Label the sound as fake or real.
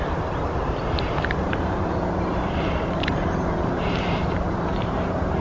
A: fake